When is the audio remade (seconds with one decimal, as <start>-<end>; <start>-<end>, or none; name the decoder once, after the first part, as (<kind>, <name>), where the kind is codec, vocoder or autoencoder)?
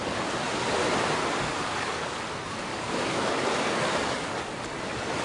1.2-2.2 (codec, DAC); 2.7-4.4